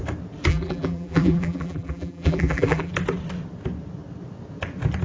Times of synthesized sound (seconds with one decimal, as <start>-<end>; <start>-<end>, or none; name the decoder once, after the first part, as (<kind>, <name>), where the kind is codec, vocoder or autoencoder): 0.5-2.9 (vocoder, BigVGAN v2)